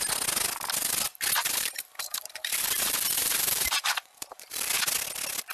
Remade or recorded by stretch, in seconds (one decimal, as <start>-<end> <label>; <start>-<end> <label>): 0.0-1.4 recorded; 1.4-4.7 remade; 4.7-5.5 recorded

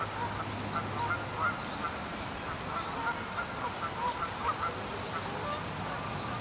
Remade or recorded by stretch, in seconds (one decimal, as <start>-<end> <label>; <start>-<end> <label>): 0.0-3.0 recorded; 3.0-4.7 remade; 4.7-6.4 recorded

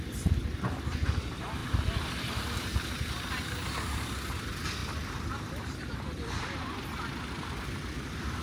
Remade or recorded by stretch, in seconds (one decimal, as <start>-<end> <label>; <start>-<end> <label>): 0.0-8.4 remade

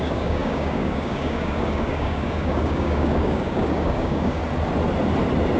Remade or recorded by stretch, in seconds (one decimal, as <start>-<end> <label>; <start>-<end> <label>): 0.0-4.4 remade; 4.4-5.6 recorded

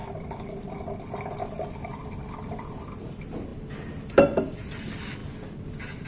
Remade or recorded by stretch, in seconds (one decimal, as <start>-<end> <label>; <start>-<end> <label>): 0.0-1.0 remade; 1.0-3.5 recorded; 3.5-4.8 remade; 4.8-5.2 recorded; 5.2-6.1 remade